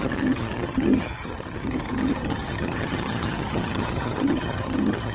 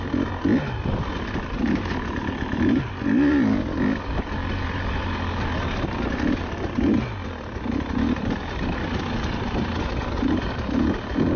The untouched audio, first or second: second